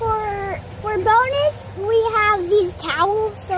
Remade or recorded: recorded